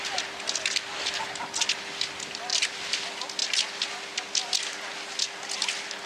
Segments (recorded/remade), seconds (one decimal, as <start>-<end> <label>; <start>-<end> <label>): 0.0-2.5 recorded; 2.5-3.0 remade; 3.0-6.1 recorded